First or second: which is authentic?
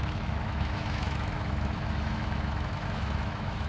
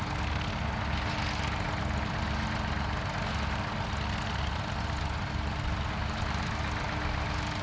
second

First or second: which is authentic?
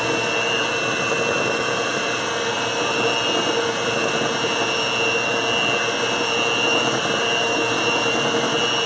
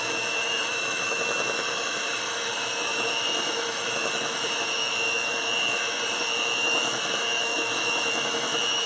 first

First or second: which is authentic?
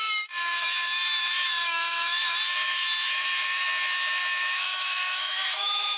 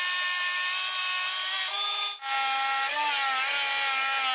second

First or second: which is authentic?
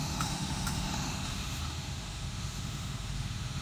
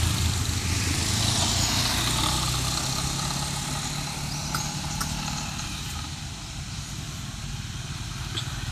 second